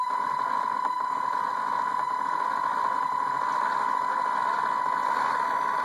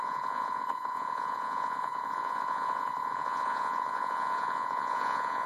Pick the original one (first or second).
first